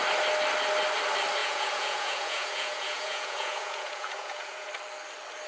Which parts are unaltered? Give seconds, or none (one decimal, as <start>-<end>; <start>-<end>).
0.0-1.4; 4.7-5.5